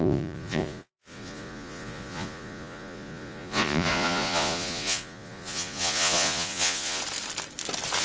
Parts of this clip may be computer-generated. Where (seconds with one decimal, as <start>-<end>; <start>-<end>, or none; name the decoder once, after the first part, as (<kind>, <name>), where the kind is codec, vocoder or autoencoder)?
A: 0.0-7.0 (vocoder, Vocos)